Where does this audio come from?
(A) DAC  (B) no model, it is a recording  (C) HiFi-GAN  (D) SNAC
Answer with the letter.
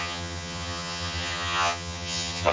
C